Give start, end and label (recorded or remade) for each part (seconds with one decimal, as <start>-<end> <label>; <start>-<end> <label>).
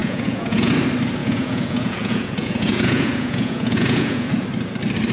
0.0-0.7 remade; 0.7-1.2 recorded; 1.2-4.3 remade; 4.3-5.1 recorded